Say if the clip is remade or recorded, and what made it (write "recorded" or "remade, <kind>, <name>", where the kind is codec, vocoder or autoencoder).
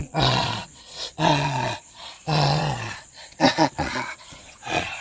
remade, vocoder, Vocos